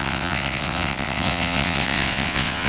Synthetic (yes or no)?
yes